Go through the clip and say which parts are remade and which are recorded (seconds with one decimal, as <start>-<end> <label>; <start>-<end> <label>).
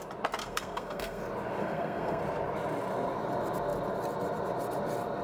0.0-0.4 recorded; 0.4-1.2 remade; 1.2-1.6 recorded; 1.6-2.2 remade; 2.2-5.2 recorded